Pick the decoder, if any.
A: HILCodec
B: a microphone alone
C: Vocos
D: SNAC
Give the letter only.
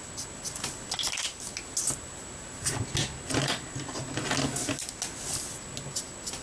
B